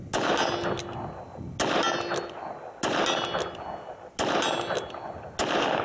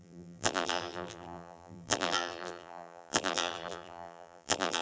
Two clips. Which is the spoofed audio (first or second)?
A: second